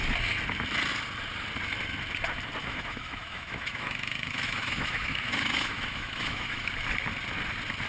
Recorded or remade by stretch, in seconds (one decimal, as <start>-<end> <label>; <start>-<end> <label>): 0.0-2.6 recorded; 2.6-6.7 remade; 6.7-7.9 recorded